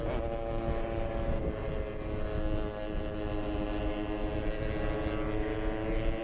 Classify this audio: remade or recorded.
recorded